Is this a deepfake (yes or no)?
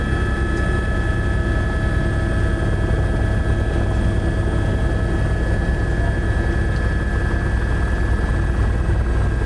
no